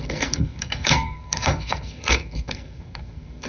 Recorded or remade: remade